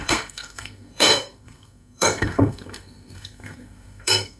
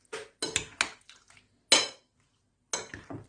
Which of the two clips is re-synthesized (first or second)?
first